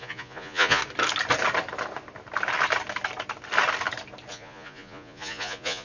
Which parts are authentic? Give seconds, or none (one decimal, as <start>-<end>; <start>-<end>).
0.8-4.3